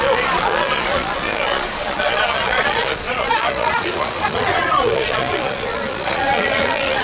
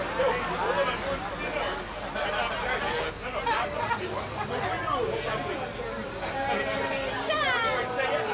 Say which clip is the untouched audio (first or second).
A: second